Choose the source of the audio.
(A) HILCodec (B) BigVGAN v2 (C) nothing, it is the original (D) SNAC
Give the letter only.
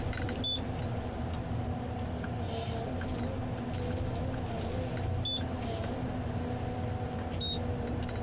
C